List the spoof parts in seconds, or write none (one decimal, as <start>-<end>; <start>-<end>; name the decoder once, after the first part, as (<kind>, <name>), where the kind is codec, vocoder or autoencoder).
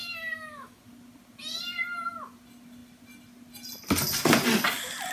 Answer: 0.0-0.8 (autoencoder, DAC-VAE)